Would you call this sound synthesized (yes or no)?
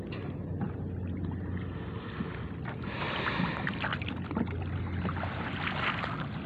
no